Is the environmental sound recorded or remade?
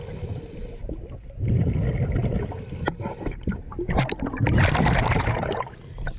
recorded